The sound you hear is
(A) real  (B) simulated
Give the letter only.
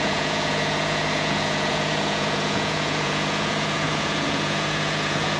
B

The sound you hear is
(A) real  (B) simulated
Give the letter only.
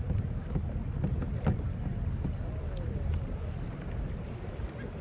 A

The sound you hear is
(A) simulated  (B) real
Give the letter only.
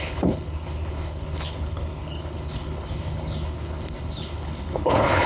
A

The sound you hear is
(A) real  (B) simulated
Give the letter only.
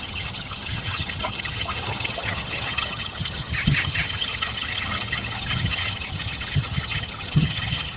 B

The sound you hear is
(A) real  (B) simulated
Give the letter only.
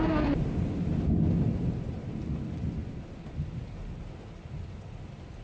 A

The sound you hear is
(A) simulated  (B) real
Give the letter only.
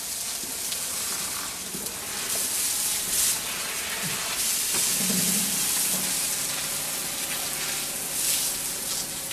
B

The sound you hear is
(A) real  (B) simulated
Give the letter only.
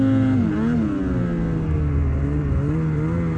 A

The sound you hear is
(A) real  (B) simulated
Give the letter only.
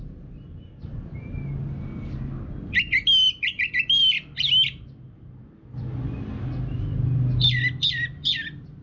A